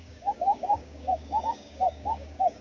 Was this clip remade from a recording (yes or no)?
yes